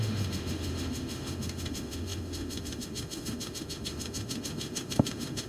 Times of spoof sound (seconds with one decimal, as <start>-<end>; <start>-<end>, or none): 0.0-5.5